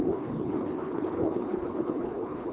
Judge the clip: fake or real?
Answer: fake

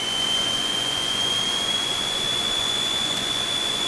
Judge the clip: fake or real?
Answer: fake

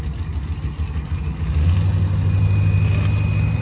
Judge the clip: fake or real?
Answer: real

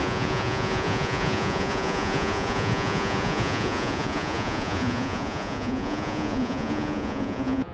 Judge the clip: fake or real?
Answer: fake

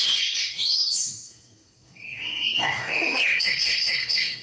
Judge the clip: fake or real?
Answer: fake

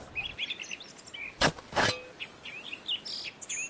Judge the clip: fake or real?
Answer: real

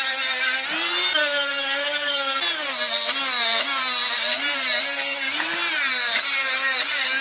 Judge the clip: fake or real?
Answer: real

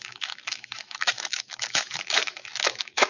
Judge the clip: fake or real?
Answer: fake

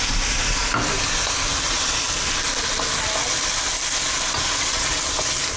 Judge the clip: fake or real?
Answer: real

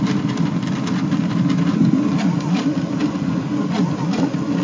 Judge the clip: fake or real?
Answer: real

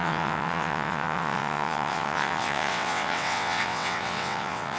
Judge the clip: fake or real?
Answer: fake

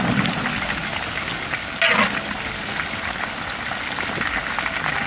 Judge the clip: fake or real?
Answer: real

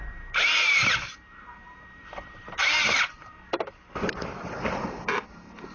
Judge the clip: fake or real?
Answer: fake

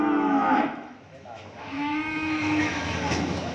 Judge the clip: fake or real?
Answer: fake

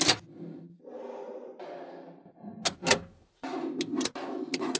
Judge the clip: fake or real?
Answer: real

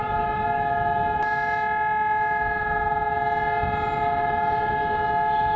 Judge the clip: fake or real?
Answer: real